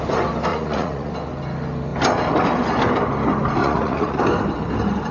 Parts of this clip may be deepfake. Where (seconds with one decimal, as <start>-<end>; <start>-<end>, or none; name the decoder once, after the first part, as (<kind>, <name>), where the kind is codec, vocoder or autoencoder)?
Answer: 0.5-1.1 (vocoder, Vocos); 3.6-4.2